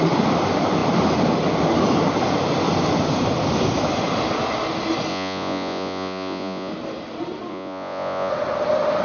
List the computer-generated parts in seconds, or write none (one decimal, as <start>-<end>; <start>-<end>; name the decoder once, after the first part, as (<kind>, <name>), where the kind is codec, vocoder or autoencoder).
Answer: 5.1-6.7 (vocoder, Vocos); 7.5-8.3